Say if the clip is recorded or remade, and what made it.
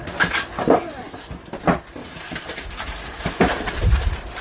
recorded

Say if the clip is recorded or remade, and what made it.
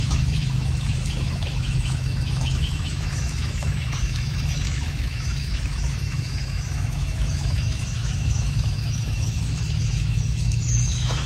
remade, autoencoder, DAC-VAE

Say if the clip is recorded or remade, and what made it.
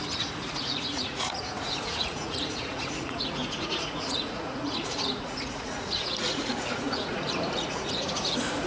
remade, vocoder, Vocos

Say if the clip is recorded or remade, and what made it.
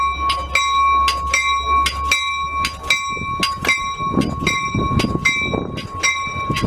recorded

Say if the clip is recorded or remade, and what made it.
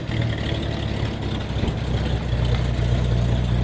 recorded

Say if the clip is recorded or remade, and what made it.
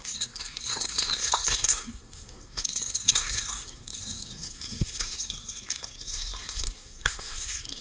remade, codec, SNAC